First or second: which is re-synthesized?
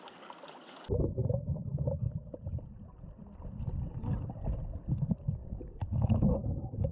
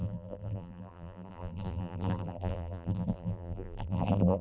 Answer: second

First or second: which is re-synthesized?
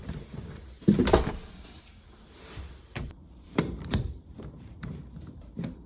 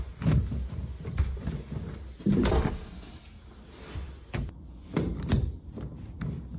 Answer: first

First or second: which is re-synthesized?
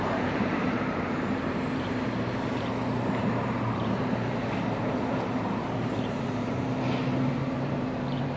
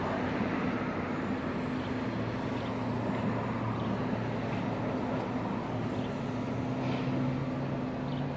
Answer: first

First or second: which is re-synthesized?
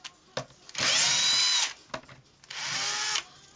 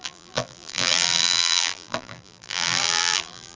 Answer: second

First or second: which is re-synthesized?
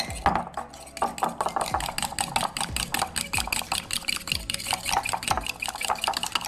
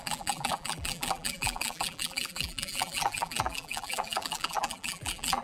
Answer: second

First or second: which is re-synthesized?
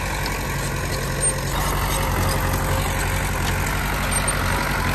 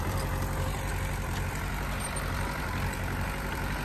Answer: second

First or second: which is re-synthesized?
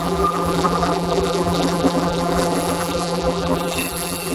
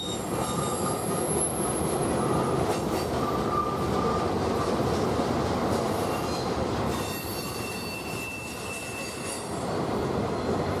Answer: first